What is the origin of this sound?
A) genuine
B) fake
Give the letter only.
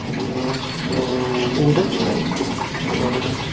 A